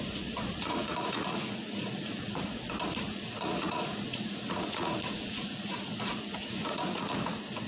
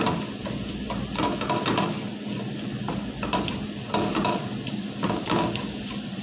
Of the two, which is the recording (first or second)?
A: second